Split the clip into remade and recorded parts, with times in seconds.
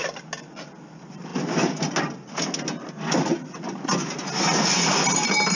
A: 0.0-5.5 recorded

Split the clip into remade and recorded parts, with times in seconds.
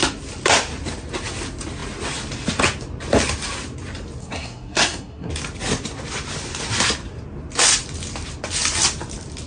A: 0.0-4.2 recorded; 4.2-5.3 remade; 5.3-9.5 recorded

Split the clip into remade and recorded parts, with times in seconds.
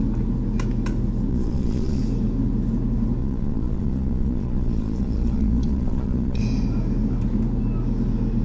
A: 0.0-1.3 recorded; 1.3-2.0 remade; 2.0-3.2 recorded; 3.2-6.4 remade; 6.4-8.4 recorded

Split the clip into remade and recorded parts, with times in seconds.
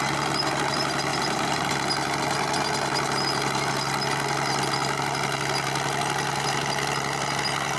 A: 0.0-1.1 recorded; 1.1-1.7 remade; 1.7-7.8 recorded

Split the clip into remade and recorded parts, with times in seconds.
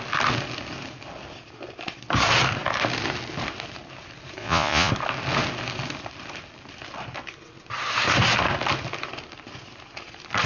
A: 0.0-4.4 recorded; 4.4-4.9 remade; 4.9-10.5 recorded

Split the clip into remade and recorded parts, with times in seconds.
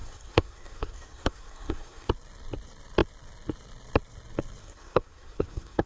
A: 0.0-2.1 remade; 2.1-4.6 recorded; 4.6-5.9 remade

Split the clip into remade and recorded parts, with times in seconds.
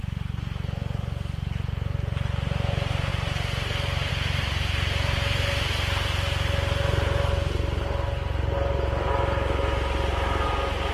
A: 0.0-10.9 recorded